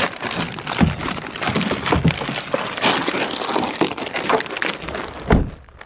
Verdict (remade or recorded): recorded